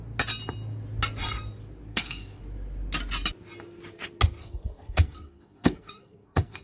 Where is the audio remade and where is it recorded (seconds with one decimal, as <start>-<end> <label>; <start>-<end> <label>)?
0.0-1.9 recorded; 1.9-2.4 remade; 2.4-4.4 recorded; 4.4-6.6 remade